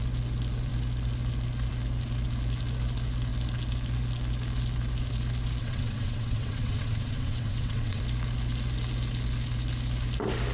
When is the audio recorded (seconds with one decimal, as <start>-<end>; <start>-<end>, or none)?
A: 0.0-5.6; 8.0-10.5